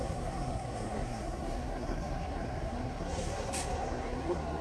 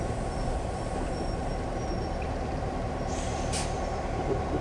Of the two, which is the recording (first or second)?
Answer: second